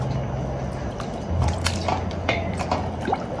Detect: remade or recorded recorded